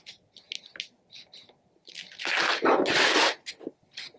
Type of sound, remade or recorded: recorded